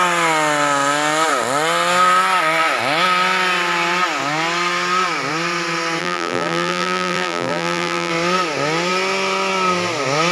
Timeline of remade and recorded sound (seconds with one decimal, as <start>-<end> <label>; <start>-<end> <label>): 0.0-6.0 recorded; 6.0-8.1 remade; 8.1-10.3 recorded